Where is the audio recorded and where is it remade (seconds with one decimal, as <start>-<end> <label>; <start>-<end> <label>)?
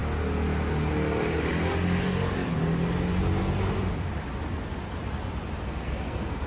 0.0-5.6 recorded; 5.6-6.5 remade